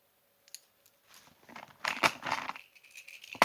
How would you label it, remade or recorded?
recorded